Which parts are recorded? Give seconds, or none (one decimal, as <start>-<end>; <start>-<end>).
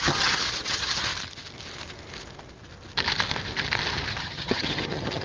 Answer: 1.1-4.2